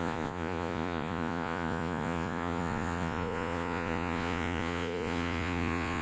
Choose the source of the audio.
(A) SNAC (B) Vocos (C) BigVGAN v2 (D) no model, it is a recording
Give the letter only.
B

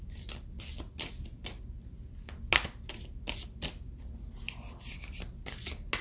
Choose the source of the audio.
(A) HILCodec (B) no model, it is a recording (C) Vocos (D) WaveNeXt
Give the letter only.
B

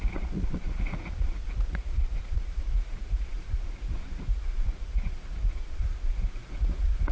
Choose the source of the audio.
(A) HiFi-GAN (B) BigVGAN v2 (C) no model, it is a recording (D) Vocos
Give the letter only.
D